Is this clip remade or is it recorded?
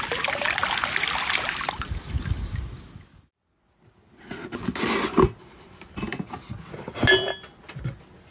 recorded